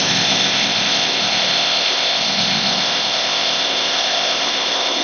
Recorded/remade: remade